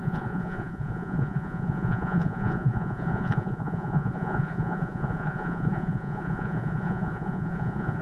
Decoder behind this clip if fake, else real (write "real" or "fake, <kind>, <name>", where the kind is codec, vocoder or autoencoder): fake, vocoder, Vocos